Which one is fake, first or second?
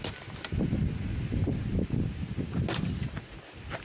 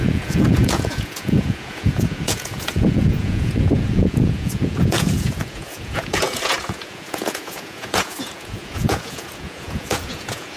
second